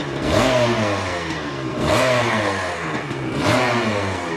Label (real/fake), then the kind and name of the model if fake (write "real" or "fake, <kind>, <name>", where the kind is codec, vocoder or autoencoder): fake, codec, SNAC